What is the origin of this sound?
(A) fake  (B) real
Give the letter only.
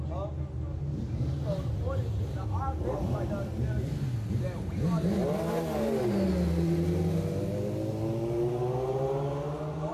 B